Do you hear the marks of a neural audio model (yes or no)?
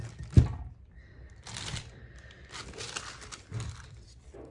yes